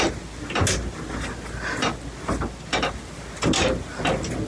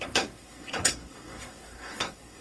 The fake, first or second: second